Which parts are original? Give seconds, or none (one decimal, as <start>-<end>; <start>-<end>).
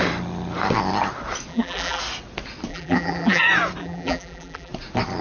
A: 0.0-1.5; 2.0-2.7; 3.4-3.8; 4.7-5.2